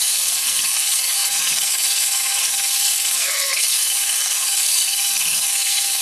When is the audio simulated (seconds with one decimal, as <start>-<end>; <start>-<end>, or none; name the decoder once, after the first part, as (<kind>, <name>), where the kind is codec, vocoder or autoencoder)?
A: 0.0-6.0 (codec, SNAC)